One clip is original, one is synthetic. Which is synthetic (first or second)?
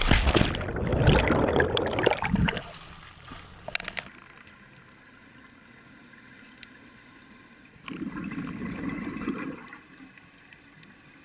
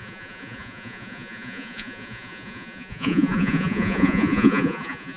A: second